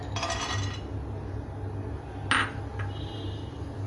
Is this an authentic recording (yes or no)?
yes